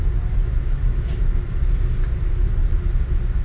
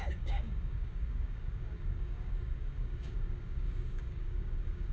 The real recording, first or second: first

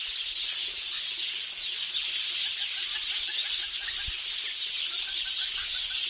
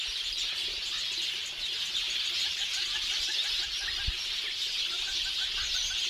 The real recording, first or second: first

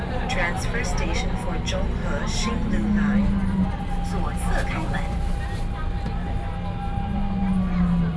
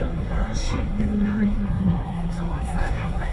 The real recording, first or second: first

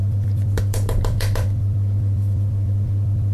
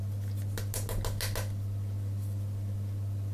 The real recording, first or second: second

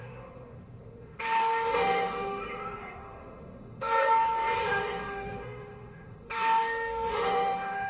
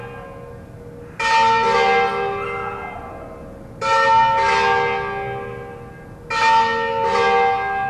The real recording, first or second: second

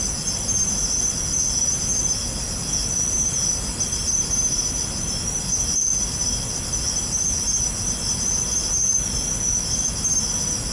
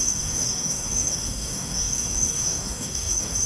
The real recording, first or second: first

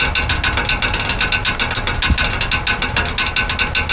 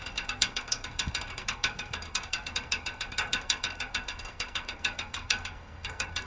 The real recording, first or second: first